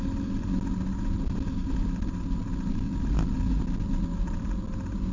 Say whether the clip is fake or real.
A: real